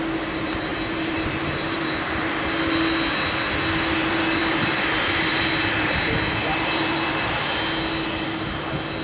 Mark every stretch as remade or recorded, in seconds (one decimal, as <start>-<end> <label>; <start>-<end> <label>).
0.0-0.7 recorded; 0.7-1.9 remade; 1.9-4.0 recorded; 4.0-5.4 remade; 5.4-6.4 recorded; 6.4-7.4 remade; 7.4-9.0 recorded